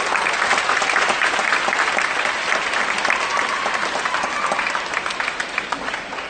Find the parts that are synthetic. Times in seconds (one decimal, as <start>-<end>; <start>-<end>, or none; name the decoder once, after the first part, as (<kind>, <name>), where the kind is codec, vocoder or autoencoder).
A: none